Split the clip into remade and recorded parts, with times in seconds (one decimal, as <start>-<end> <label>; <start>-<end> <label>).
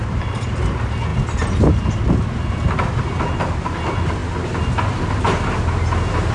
0.0-0.5 remade; 0.5-6.3 recorded